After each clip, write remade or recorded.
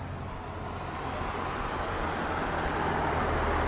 recorded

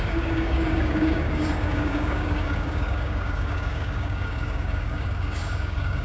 remade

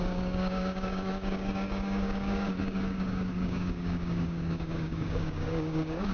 remade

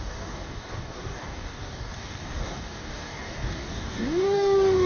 remade